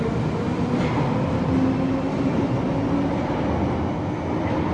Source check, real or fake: real